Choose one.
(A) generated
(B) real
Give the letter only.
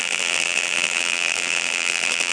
A